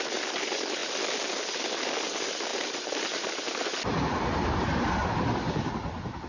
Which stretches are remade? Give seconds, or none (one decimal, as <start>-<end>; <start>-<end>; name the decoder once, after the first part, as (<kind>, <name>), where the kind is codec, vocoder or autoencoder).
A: 2.5-3.3 (vocoder, BigVGAN v2); 3.9-5.2